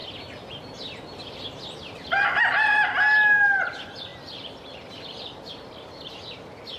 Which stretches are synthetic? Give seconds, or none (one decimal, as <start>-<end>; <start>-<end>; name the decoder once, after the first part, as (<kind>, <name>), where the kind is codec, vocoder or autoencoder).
none